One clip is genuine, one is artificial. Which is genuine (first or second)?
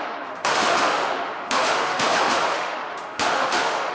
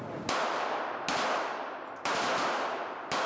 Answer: second